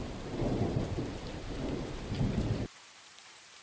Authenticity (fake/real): fake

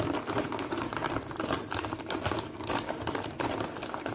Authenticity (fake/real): real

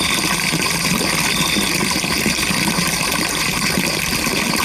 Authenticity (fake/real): real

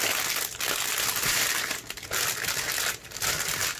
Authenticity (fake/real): real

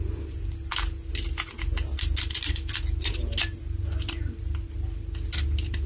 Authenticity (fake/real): real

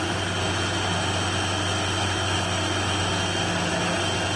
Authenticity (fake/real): real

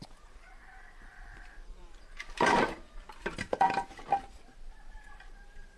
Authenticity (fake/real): fake